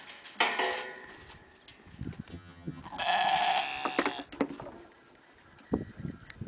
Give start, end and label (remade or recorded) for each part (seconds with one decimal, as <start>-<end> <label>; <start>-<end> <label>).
0.0-2.3 recorded; 2.3-2.8 remade; 2.8-6.5 recorded